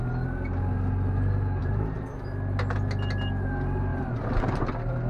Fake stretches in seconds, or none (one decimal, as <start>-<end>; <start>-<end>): 1.6-2.1; 3.9-4.6